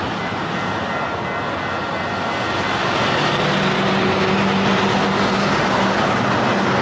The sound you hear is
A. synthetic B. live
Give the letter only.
B